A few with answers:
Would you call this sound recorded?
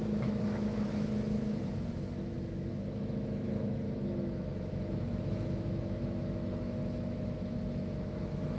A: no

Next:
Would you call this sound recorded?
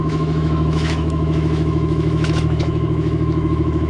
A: no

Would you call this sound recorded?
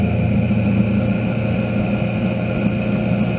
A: yes